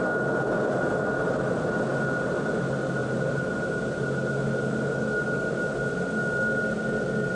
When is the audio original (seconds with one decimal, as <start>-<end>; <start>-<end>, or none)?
0.0-3.0; 4.0-7.3